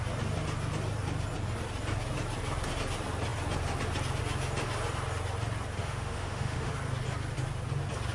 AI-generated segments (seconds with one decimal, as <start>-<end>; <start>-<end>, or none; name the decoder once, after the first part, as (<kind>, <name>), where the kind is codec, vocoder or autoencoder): 5.8-6.7 (autoencoder, DAC-VAE)